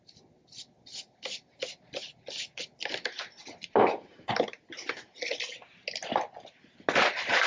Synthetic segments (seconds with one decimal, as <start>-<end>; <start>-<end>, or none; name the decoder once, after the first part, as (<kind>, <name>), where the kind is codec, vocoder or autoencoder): none